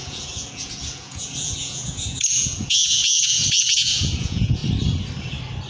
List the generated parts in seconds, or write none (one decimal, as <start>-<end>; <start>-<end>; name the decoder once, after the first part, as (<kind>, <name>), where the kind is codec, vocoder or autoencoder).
0.0-4.6 (vocoder, Vocos)